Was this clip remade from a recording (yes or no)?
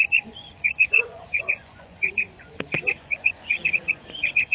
yes